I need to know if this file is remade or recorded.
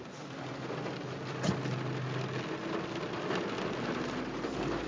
recorded